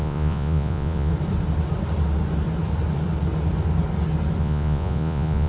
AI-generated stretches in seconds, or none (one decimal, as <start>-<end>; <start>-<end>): 0.0-1.1; 4.4-5.5